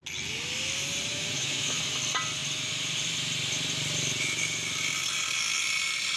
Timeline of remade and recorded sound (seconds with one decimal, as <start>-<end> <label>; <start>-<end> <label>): 0.0-1.1 recorded; 1.1-1.8 remade; 1.8-6.2 recorded